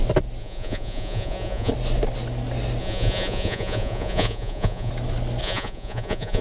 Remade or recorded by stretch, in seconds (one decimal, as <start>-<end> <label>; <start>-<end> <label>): 0.0-0.4 recorded; 0.4-1.7 remade; 1.7-2.8 recorded; 2.8-4.9 remade; 4.9-5.4 recorded; 5.4-6.4 remade